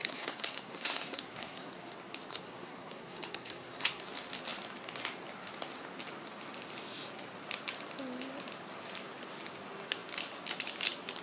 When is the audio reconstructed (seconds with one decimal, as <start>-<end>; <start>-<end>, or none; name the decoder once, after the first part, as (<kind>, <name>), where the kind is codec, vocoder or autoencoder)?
0.0-1.7 (codec, SNAC); 2.3-4.0